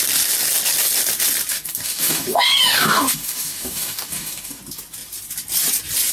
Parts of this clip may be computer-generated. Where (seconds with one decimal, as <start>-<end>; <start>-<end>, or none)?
1.5-4.6